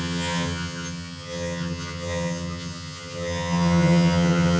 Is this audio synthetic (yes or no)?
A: yes